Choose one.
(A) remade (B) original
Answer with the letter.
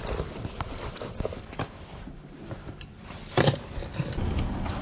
B